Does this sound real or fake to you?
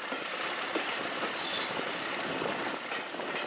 real